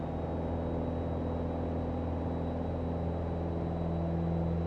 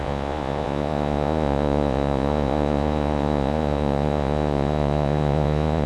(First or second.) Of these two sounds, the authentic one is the first